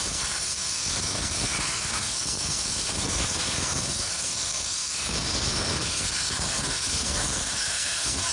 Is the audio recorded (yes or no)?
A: no